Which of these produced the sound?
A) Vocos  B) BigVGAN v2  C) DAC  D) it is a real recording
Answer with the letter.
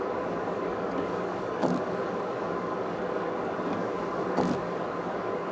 C